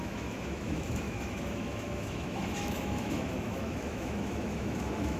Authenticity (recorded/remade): remade